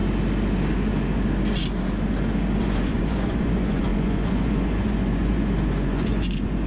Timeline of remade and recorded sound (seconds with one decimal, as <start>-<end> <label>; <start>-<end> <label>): 0.0-2.6 recorded; 2.6-6.7 remade